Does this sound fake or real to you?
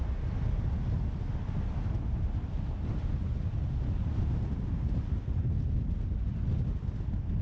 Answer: real